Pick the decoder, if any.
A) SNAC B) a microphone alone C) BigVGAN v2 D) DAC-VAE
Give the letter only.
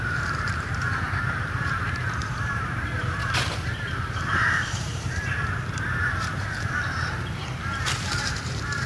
C